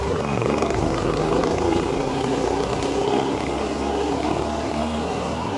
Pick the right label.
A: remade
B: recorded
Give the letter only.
A